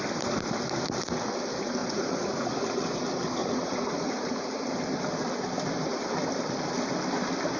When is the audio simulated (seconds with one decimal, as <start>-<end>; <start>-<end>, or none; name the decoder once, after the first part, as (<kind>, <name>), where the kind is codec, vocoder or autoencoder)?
1.8-3.0 (vocoder, Vocos); 3.4-4.6